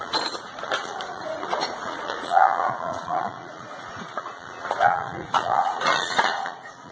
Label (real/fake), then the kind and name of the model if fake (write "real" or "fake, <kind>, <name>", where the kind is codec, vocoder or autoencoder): fake, vocoder, Vocos